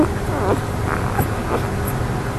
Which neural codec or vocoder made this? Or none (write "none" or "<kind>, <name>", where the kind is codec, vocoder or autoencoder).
none